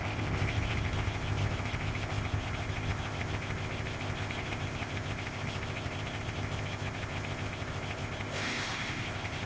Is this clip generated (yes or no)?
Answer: yes